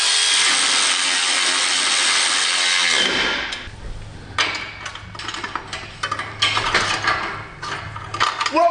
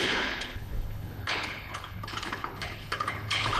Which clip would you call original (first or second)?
first